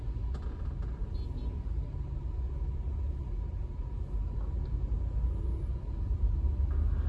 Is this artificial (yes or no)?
no